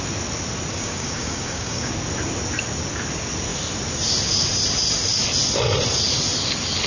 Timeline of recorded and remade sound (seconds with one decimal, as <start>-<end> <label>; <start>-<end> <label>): 0.0-0.7 recorded; 0.7-1.9 remade; 1.9-6.9 recorded